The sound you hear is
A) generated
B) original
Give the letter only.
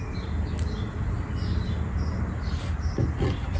B